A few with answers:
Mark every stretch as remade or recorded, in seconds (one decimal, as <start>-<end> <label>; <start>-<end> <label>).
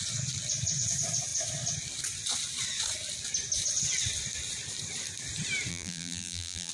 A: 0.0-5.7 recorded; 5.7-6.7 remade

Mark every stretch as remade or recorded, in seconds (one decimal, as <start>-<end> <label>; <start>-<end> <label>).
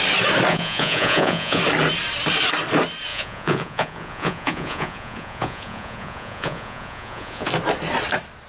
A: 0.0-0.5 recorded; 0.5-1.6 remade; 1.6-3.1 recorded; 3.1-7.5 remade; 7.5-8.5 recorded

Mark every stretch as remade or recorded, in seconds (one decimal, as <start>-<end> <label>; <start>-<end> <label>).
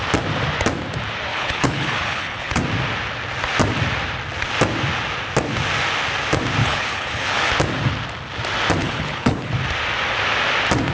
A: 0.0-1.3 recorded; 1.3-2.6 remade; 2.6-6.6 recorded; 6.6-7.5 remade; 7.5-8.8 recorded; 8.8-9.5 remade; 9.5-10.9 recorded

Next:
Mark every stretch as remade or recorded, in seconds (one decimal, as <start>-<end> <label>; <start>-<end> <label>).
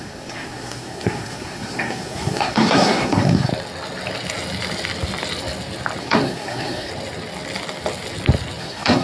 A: 0.0-3.5 remade; 3.5-6.0 recorded; 6.0-6.9 remade; 6.9-8.6 recorded; 8.6-9.0 remade